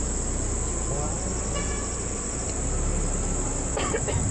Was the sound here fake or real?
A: real